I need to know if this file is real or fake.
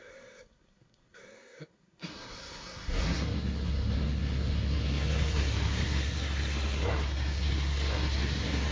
fake